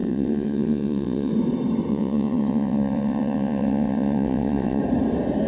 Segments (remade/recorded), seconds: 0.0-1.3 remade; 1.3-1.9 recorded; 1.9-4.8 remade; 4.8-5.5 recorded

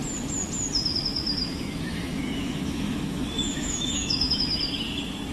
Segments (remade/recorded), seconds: 0.0-1.4 recorded; 1.4-4.6 remade; 4.6-5.3 recorded